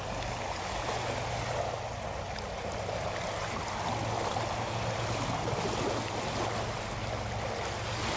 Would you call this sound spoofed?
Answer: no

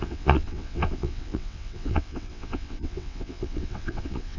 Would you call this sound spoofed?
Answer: yes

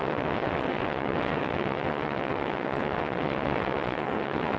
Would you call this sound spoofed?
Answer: yes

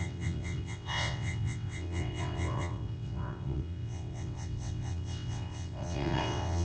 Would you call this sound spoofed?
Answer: yes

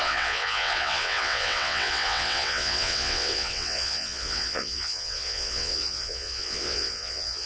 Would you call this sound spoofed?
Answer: yes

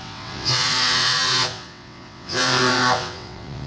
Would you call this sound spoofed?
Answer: yes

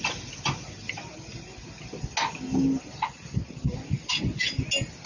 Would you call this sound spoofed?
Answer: no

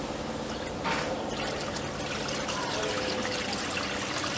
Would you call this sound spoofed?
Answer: no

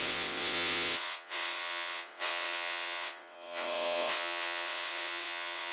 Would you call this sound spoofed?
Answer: yes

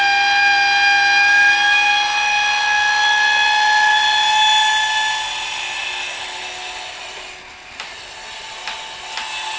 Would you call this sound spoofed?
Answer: no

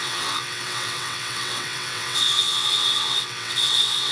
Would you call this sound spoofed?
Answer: yes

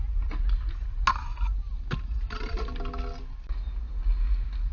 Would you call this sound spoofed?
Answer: no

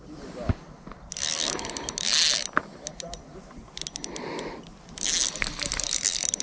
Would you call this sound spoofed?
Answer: no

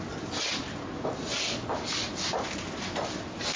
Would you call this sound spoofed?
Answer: no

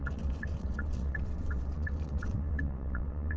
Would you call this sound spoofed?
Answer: yes